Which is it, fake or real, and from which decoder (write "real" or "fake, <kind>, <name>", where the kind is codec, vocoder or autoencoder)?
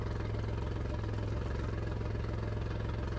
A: real